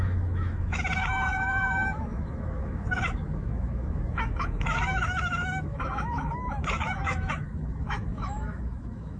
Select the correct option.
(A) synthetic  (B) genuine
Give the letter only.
A